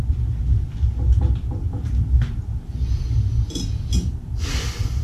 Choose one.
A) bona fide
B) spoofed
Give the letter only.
A